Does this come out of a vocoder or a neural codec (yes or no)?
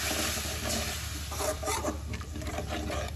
no